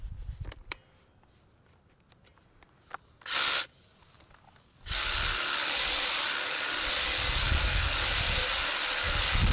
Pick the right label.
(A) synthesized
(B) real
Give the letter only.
B